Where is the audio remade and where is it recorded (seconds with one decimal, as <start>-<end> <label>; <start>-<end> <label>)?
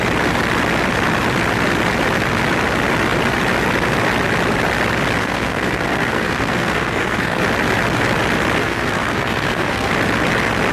0.0-5.2 recorded; 5.2-7.4 remade; 7.4-8.6 recorded; 8.6-9.9 remade; 9.9-10.7 recorded